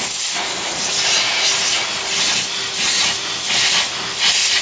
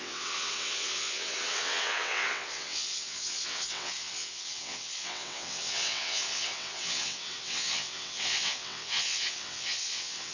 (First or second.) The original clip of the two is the first